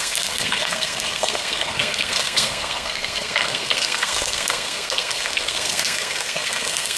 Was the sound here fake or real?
fake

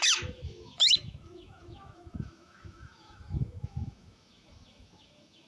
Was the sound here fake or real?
fake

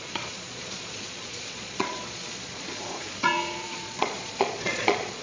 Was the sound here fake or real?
fake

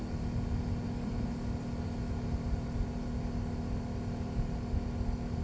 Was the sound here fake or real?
real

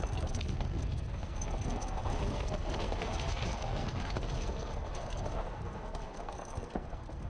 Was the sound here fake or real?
fake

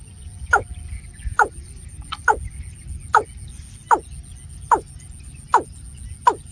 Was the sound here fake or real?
real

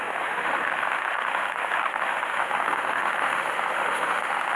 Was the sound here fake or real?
fake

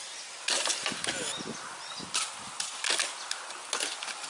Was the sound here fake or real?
real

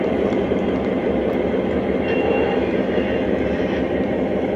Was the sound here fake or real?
fake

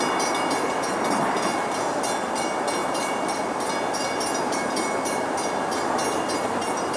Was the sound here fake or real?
real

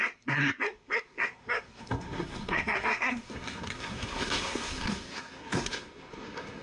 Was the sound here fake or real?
fake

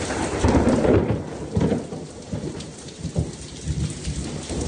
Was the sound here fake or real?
fake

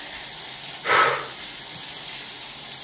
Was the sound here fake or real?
real